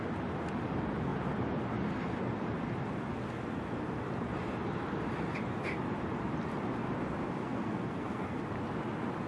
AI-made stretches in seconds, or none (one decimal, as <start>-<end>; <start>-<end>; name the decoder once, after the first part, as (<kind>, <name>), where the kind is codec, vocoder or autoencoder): 7.4-8.4 (codec, SNAC)

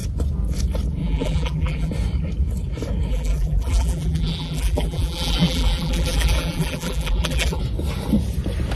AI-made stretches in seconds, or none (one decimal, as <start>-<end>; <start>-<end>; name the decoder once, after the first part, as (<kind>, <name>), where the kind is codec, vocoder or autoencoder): 1.0-1.9 (vocoder, BigVGAN v2); 3.1-7.6

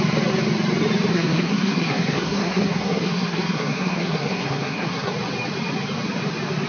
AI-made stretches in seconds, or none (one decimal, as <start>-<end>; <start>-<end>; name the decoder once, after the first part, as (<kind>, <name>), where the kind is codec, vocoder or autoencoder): 1.1-5.1 (codec, SNAC)

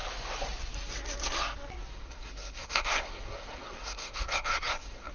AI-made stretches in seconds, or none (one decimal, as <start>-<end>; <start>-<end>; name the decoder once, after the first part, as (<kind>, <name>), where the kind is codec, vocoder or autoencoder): 1.9-5.1 (codec, SNAC)

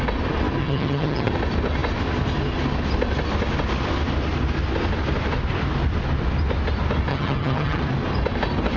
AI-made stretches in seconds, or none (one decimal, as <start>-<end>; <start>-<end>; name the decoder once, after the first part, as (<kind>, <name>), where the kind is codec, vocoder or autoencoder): 0.6-1.3 (vocoder, HiFi-GAN); 7.1-7.8

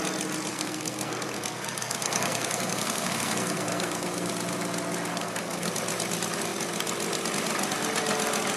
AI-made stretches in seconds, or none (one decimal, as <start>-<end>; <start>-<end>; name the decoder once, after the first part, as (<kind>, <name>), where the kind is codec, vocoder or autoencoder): 0.5-4.3 (codec, SNAC); 5.1-5.7